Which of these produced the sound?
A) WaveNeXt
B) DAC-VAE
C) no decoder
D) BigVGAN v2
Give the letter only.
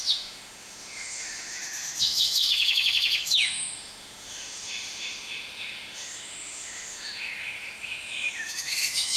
B